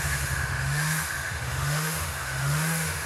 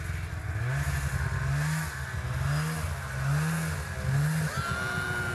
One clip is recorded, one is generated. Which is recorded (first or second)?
second